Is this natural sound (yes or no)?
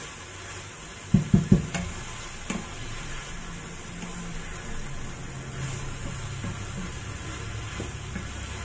yes